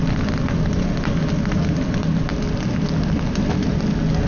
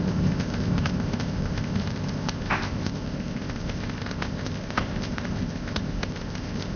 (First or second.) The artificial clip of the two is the second